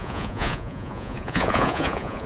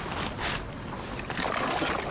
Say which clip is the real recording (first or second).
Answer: second